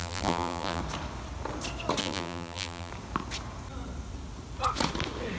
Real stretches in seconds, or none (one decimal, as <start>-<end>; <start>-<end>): 0.8-2.0; 2.9-5.4

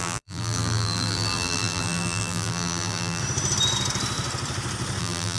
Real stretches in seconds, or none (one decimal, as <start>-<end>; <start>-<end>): 3.2-5.0

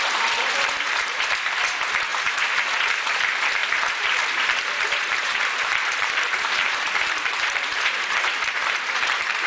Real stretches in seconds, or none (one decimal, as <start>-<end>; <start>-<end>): none

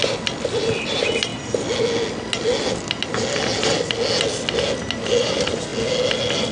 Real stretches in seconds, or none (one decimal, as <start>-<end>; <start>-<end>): 1.3-5.2; 5.7-6.5

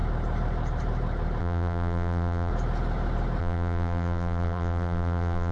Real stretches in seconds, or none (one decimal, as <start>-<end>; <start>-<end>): 0.0-1.4; 2.5-3.4

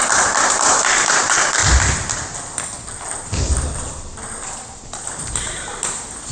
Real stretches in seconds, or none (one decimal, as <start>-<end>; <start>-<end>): 1.6-5.0

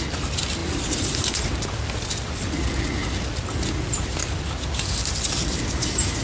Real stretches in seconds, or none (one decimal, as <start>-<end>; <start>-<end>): 0.0-0.6; 1.5-6.2

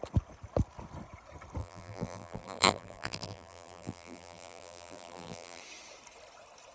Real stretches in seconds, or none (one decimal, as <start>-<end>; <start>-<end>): 0.0-1.6; 5.6-6.7